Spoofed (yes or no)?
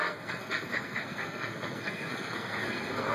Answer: yes